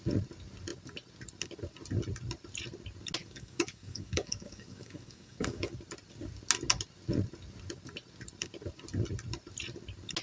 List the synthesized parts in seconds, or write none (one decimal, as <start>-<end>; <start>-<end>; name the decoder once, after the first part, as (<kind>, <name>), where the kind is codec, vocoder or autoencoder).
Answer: 3.2-5.7 (codec, DAC)